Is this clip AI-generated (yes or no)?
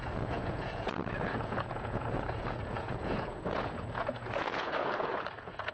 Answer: yes